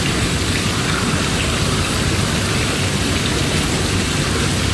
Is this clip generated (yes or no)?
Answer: no